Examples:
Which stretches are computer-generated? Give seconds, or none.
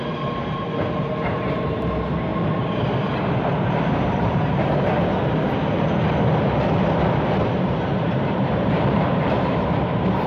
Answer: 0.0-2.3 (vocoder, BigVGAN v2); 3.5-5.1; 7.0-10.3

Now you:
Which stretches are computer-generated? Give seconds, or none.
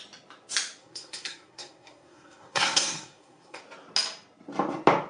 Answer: 0.8-3.6 (codec, SNAC)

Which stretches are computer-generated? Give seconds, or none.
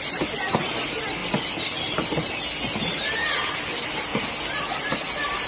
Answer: none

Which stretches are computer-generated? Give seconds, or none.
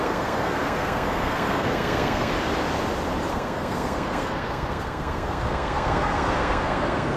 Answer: 0.0-2.3 (codec, SNAC); 3.3-7.2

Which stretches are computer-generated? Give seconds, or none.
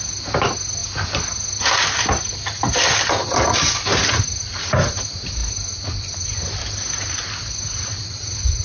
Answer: none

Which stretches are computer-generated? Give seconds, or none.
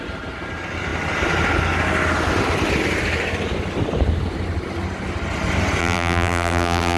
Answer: 5.8-7.0 (vocoder, BigVGAN v2)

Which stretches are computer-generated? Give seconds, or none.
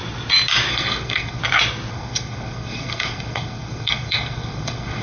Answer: 0.7-1.4 (codec, SNAC); 1.9-5.0